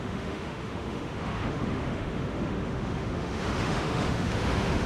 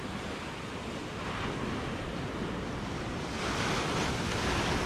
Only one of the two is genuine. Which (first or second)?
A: second